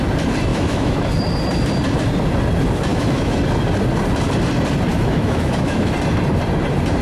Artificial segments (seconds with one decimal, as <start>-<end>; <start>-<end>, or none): 0.5-1.1; 2.9-3.4; 4.9-5.9